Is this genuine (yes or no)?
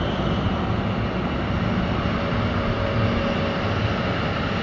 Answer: yes